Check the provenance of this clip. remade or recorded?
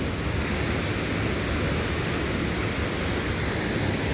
recorded